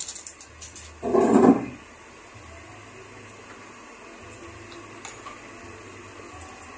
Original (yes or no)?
yes